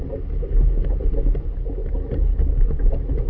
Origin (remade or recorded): recorded